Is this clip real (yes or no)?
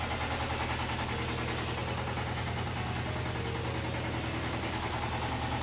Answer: yes